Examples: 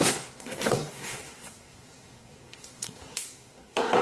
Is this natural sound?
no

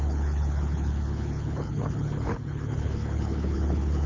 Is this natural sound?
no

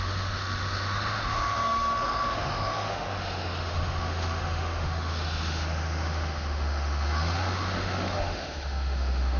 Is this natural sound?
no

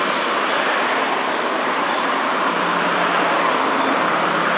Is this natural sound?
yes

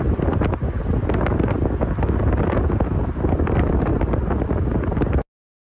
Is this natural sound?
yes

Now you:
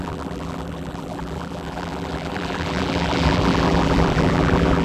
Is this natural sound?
no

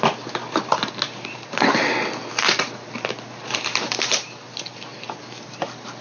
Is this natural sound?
yes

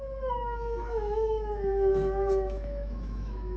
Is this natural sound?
no